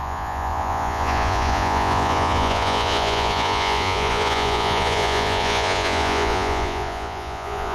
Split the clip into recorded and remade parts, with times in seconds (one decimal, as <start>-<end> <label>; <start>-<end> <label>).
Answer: 0.0-7.7 remade